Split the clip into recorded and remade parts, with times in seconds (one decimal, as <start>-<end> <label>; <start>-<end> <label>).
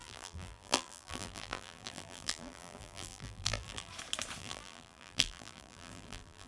0.0-3.9 remade; 3.9-4.4 recorded; 4.4-6.5 remade